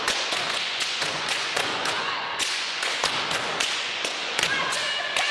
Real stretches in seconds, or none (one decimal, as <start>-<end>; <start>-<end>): none